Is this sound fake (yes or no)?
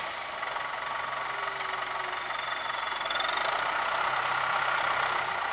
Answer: no